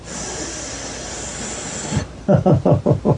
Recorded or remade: recorded